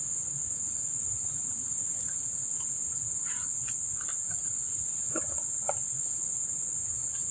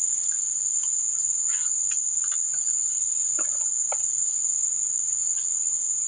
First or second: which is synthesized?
first